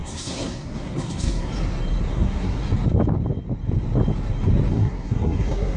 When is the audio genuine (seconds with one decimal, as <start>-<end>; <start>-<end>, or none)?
1.5-2.1; 2.6-4.7

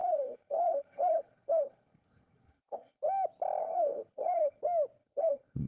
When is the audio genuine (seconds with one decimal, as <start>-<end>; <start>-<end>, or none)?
3.0-3.6; 4.6-5.0

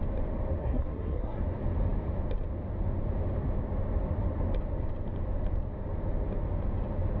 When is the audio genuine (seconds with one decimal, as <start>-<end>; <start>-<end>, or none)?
0.0-0.6; 1.4-7.2

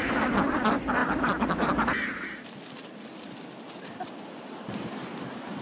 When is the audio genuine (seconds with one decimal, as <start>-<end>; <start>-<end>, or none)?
0.0-5.6

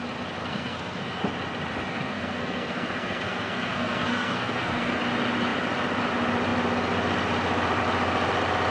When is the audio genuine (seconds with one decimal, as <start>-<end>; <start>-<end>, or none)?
0.0-0.4; 1.2-1.9; 5.0-8.7

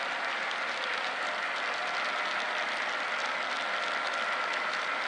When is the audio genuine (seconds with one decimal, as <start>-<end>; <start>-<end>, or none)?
0.0-5.1

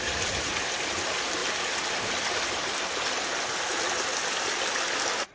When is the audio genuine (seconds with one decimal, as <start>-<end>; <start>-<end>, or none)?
0.0-5.3

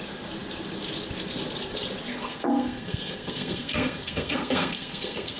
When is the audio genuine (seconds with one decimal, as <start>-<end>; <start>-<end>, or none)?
0.0-2.1